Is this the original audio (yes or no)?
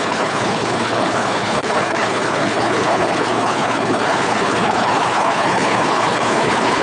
no